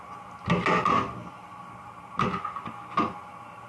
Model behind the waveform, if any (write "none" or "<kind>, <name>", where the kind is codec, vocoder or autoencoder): none